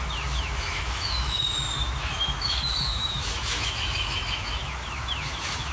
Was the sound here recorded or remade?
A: remade